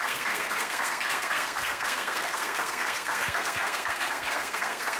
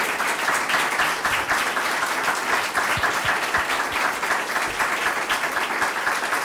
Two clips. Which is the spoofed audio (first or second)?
first